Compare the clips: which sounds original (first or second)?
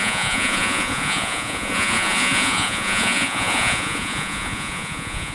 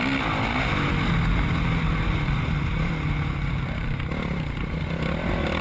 second